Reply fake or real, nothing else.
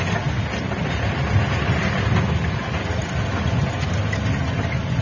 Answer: real